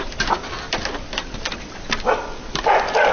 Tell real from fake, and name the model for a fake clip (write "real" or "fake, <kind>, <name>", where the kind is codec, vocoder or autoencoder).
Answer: real